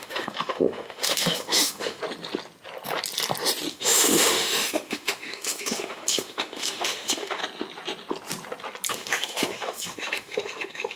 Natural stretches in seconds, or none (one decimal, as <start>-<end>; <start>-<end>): 2.0-3.7; 7.4-8.9